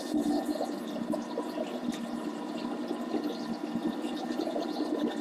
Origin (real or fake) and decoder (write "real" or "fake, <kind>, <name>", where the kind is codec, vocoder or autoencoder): real